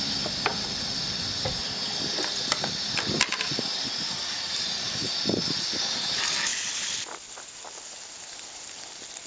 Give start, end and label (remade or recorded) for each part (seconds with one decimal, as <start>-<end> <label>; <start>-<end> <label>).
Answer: 0.0-9.3 recorded